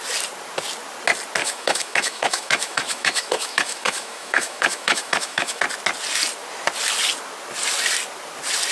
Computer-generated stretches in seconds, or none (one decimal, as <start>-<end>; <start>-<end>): 1.4-5.6